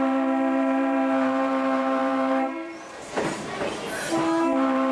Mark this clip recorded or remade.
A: remade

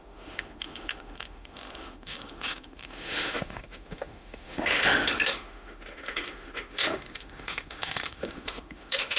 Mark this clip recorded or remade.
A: remade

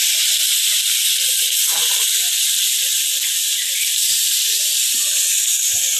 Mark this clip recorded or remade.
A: recorded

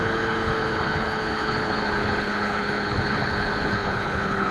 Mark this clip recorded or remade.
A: remade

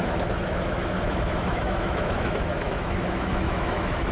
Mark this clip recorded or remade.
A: remade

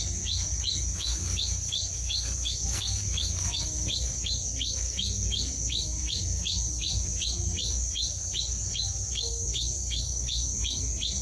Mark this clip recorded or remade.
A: remade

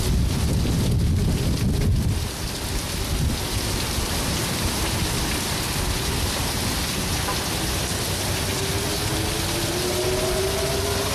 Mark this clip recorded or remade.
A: recorded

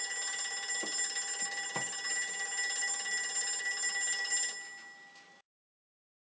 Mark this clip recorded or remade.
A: recorded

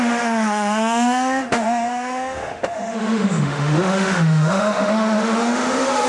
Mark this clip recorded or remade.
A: remade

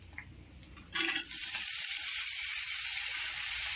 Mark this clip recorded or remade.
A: remade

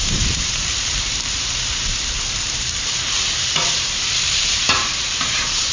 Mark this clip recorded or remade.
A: remade